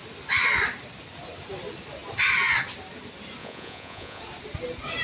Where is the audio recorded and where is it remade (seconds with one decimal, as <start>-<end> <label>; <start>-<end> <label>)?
0.0-3.4 recorded; 3.4-4.2 remade; 4.2-5.0 recorded